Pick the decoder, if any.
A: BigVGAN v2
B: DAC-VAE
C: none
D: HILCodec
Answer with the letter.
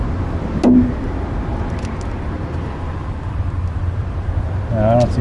C